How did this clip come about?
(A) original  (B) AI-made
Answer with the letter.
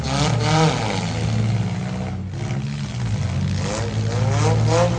A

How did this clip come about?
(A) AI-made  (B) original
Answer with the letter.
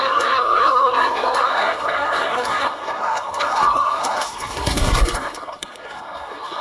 A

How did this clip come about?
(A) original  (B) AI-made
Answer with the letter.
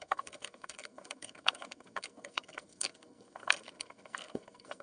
B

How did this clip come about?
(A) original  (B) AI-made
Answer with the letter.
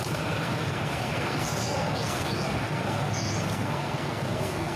B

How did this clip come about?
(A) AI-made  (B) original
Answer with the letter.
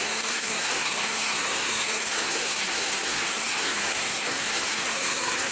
A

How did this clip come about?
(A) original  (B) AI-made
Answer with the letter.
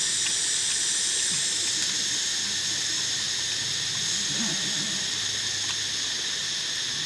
A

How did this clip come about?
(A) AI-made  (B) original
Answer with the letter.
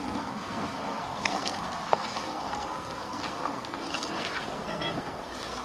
A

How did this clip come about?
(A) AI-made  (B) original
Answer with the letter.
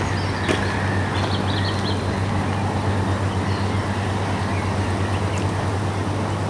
B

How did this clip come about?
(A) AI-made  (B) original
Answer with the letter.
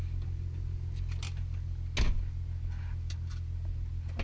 B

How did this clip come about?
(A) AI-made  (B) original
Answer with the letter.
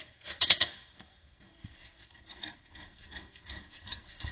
A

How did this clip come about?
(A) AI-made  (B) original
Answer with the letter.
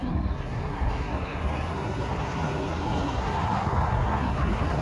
A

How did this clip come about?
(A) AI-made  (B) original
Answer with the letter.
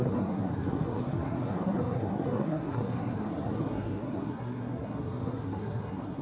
A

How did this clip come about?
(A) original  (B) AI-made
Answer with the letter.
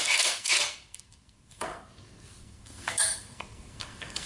B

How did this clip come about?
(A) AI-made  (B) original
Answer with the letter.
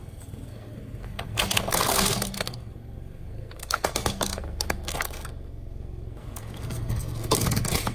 A